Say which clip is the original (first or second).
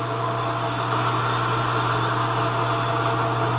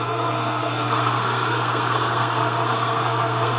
first